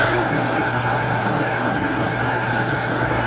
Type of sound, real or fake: fake